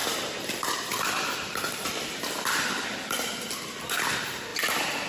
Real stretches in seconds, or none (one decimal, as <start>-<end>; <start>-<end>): 0.0-5.1